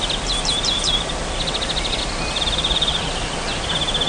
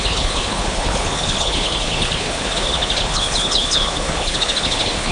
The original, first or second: first